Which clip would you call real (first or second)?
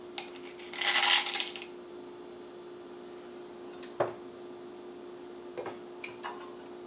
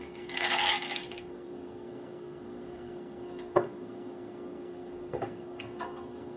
first